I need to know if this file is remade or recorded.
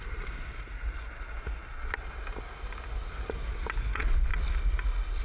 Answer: recorded